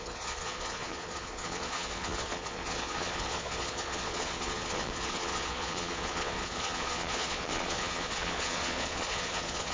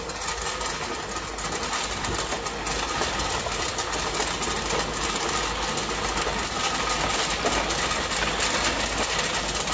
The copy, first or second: first